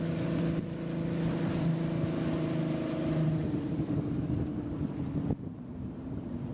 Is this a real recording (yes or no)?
yes